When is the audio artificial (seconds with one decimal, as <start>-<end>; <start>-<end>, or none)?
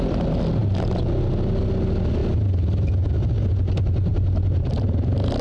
4.1-5.4